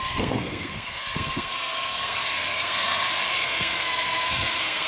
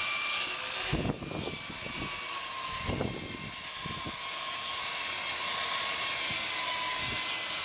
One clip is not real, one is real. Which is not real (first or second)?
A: first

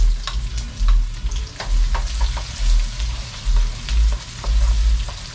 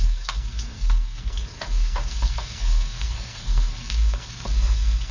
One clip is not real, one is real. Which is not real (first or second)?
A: second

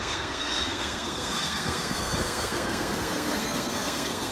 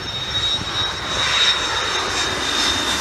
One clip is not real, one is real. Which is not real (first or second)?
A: first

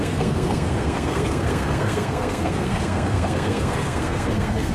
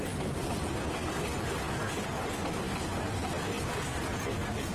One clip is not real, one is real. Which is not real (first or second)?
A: first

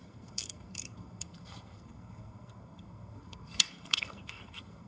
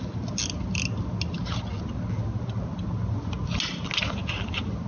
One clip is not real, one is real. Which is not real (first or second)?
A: first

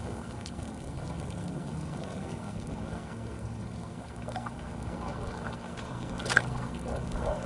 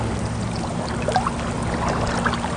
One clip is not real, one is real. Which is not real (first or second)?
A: first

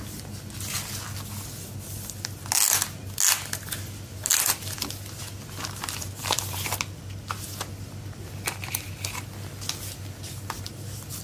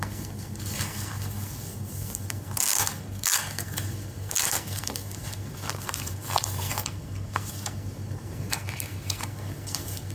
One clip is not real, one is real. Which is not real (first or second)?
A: second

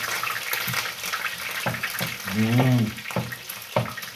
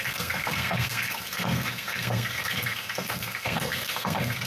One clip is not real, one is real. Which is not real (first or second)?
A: second